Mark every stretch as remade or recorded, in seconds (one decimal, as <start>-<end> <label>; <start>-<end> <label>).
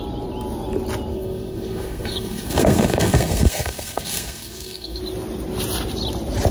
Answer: 0.0-1.1 recorded; 1.1-5.0 remade; 5.0-6.5 recorded